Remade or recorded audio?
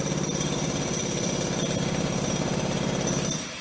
recorded